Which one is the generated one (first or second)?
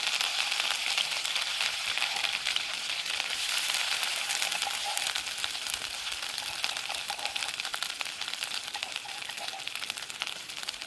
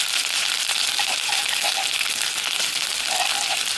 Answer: first